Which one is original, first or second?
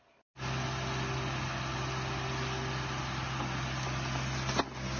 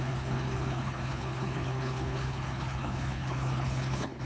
first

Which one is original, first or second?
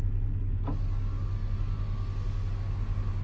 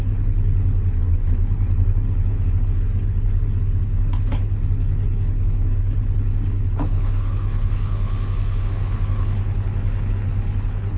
first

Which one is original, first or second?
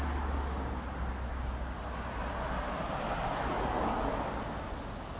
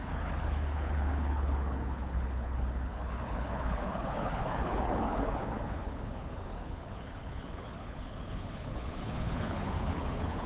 first